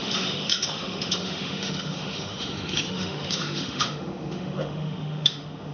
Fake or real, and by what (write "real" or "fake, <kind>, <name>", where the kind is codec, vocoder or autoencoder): fake, autoencoder, DAC-VAE